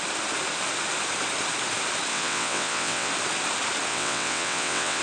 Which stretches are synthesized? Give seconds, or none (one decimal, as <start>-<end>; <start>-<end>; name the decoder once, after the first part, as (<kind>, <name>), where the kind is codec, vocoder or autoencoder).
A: 2.1-3.1 (vocoder, WaveNeXt); 3.9-5.0